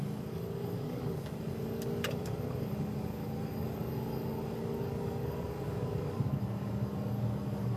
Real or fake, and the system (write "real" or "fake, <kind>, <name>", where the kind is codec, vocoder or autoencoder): fake, codec, DAC